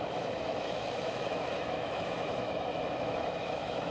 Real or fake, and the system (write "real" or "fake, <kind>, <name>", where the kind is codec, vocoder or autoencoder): fake, autoencoder, DAC-VAE